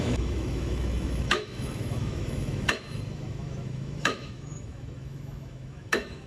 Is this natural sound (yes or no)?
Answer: no